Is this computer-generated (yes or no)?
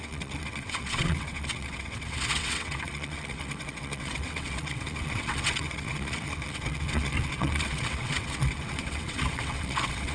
yes